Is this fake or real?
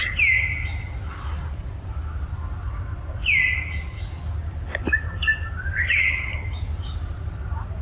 real